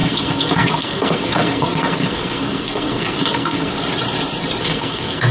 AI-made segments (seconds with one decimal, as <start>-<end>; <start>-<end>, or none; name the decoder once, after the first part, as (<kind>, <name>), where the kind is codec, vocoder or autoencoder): 0.0-3.7 (codec, SNAC); 4.6-5.3